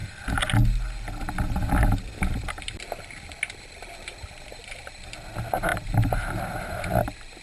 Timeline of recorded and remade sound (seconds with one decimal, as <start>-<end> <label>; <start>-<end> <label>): 0.0-7.4 recorded